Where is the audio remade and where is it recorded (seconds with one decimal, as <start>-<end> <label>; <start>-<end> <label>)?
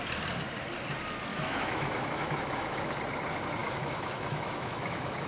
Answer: 0.0-1.3 recorded; 1.3-3.0 remade; 3.0-3.6 recorded; 3.6-5.3 remade